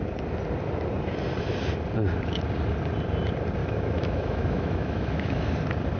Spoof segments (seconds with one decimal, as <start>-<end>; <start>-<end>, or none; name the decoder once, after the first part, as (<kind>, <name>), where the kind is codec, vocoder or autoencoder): 3.6-5.5 (autoencoder, DAC-VAE)

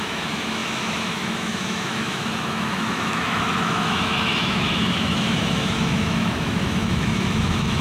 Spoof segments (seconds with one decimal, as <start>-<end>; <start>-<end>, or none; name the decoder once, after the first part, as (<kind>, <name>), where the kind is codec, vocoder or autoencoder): 0.0-7.8 (autoencoder, DAC-VAE)

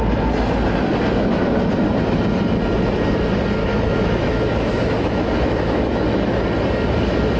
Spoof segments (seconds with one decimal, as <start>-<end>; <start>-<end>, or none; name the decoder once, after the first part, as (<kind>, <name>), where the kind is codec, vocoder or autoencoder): 3.6-6.4 (autoencoder, DAC-VAE)

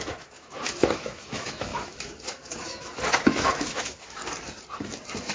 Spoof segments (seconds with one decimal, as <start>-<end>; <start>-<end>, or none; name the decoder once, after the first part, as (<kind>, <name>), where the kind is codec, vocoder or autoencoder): 0.0-4.2 (autoencoder, DAC-VAE)